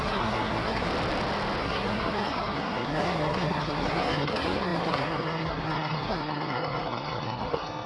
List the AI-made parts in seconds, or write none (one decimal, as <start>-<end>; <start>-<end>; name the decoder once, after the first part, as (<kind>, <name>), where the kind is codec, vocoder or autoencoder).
0.0-0.9 (codec, SNAC); 1.6-7.9